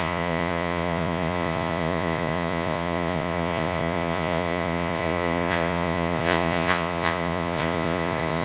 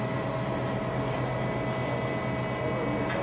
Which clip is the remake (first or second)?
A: first